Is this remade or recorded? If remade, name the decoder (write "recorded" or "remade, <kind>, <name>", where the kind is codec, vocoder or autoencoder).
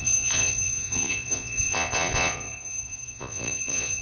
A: remade, vocoder, Vocos